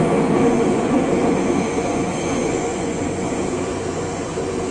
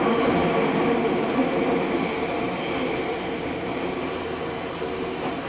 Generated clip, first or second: first